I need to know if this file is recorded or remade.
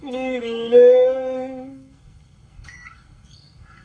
remade